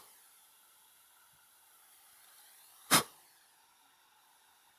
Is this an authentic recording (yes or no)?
yes